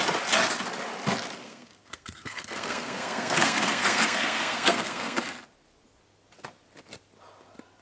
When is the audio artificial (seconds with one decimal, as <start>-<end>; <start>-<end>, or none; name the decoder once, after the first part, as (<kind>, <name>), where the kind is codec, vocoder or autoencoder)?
1.4-5.2 (codec, SNAC)